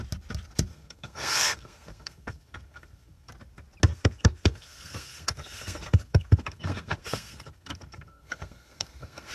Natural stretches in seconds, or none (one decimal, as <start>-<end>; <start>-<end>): 0.0-0.7; 3.3-3.9